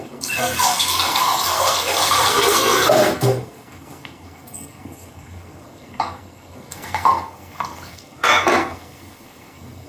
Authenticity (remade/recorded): remade